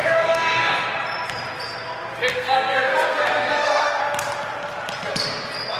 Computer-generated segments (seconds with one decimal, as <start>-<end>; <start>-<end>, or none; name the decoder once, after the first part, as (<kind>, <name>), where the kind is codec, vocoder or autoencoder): 0.0-0.9 (codec, SNAC); 2.3-4.0